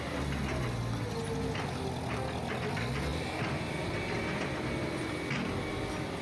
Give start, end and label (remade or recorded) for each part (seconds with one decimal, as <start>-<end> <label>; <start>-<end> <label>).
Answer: 0.0-6.2 recorded